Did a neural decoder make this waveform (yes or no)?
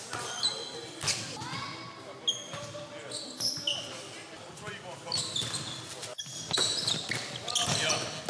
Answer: no